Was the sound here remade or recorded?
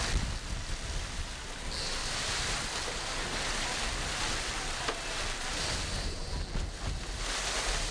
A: recorded